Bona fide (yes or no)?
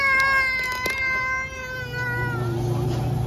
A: yes